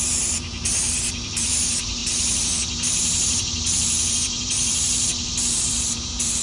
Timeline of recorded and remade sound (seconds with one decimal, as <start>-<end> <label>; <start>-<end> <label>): 0.0-6.4 remade